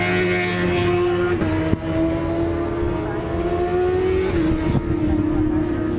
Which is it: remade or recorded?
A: recorded